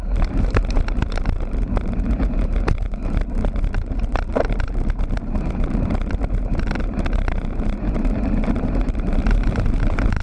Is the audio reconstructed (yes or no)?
yes